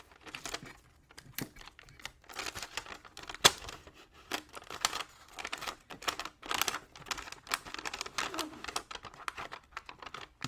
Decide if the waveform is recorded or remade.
recorded